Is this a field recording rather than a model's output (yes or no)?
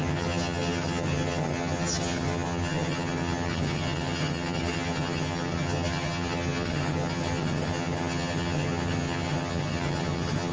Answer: no